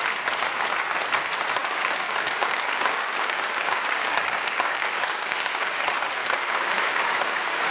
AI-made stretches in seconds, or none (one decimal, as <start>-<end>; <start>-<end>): 1.6-5.8; 6.2-7.7